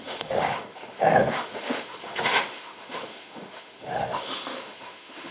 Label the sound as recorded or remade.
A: remade